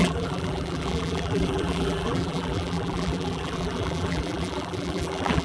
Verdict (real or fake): fake